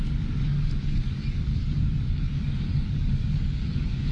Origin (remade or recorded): remade